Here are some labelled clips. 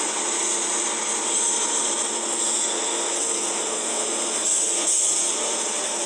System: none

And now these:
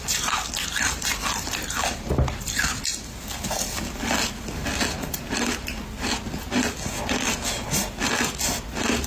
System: none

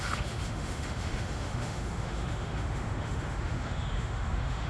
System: autoencoder, DAC-VAE